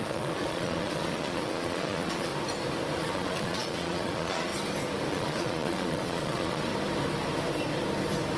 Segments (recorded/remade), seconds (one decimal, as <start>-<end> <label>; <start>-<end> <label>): 0.0-2.3 remade; 2.3-3.0 recorded; 3.0-4.5 remade; 4.5-5.1 recorded; 5.1-6.7 remade; 6.7-8.4 recorded